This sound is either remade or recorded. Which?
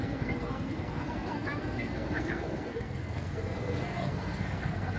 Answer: remade